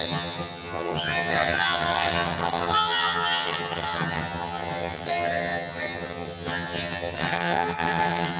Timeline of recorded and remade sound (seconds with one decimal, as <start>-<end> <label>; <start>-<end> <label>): 0.0-8.4 remade